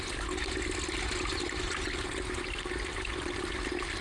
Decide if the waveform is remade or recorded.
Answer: recorded